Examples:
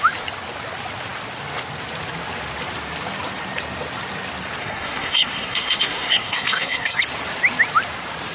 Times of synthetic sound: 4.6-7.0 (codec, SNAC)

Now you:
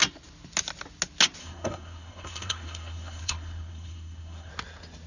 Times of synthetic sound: 1.4-4.5 (codec, SNAC)